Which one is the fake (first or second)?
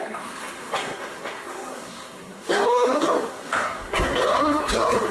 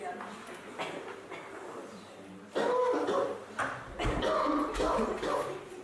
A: first